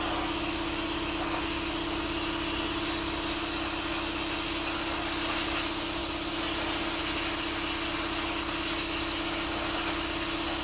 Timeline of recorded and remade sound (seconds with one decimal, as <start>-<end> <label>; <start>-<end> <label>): 0.0-10.6 recorded